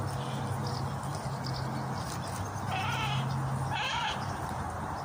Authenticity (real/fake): real